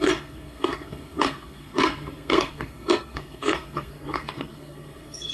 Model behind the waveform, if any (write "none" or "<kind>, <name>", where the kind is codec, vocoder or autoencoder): codec, SNAC